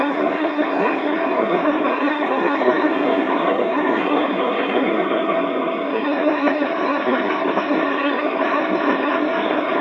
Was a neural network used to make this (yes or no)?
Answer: yes